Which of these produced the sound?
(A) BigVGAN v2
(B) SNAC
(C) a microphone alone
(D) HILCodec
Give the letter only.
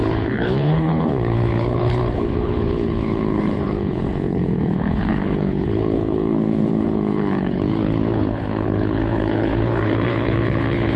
D